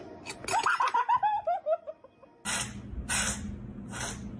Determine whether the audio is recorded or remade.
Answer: recorded